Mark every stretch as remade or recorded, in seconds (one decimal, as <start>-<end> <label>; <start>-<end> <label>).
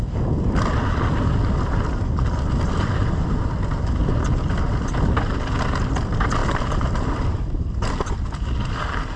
0.0-9.2 recorded